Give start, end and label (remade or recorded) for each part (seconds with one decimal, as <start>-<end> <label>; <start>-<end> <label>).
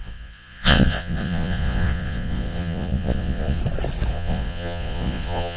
0.0-3.6 remade; 3.6-4.1 recorded; 4.1-5.6 remade